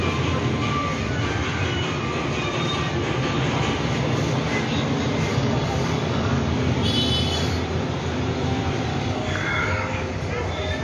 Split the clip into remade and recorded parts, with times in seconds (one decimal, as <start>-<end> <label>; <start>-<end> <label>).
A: 0.0-5.3 recorded; 5.3-6.5 remade; 6.5-8.9 recorded; 8.9-10.3 remade; 10.3-10.8 recorded